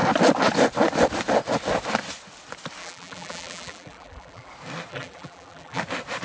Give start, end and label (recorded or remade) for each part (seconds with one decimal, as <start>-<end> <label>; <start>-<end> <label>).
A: 0.0-2.8 recorded; 2.8-4.5 remade; 4.5-4.9 recorded; 4.9-5.8 remade; 5.8-6.2 recorded